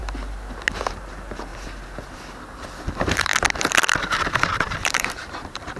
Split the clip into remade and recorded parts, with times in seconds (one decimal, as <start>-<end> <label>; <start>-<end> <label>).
0.0-0.9 recorded; 0.9-1.5 remade; 1.5-2.9 recorded; 2.9-3.3 remade; 3.3-4.0 recorded; 4.0-5.8 remade